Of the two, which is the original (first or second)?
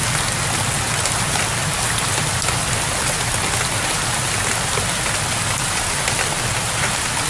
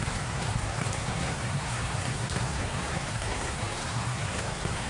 first